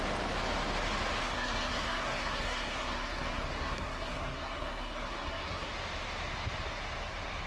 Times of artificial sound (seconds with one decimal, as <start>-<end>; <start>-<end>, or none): 1.2-5.7